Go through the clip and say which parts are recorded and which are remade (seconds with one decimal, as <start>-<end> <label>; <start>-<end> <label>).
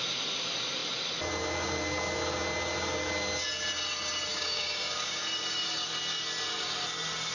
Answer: 0.0-4.3 recorded; 4.3-5.2 remade; 5.2-7.3 recorded